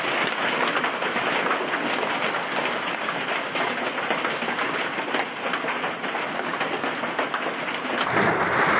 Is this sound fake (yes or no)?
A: no